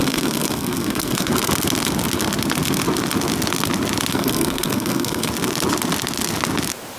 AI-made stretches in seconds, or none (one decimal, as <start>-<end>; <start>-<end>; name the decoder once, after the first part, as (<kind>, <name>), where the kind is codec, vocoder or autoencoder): 0.0-1.3 (codec, SNAC); 4.1-5.3